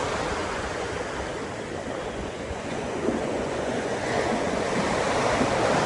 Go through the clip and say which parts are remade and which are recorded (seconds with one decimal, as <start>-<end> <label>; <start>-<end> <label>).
0.0-0.4 recorded; 0.4-0.9 remade; 0.9-2.0 recorded; 2.0-4.7 remade; 4.7-5.9 recorded